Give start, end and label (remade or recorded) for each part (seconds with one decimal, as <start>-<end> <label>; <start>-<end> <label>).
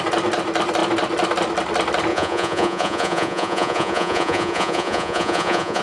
0.0-2.1 recorded; 2.1-5.8 remade